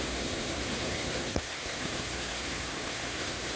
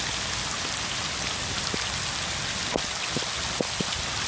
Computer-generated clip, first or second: first